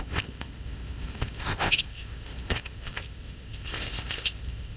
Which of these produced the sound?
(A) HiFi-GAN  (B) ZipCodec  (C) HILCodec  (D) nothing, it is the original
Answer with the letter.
B